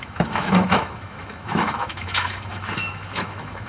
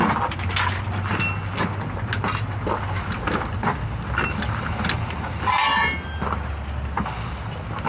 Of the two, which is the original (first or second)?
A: second